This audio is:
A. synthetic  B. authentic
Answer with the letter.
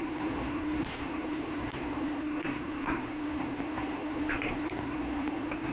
A